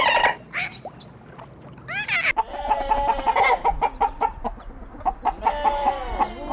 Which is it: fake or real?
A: real